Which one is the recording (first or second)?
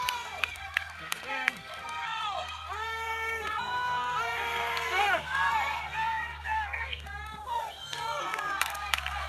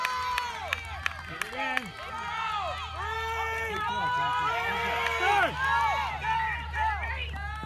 second